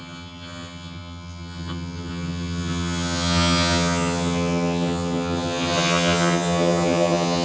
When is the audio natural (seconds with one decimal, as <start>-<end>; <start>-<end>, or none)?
none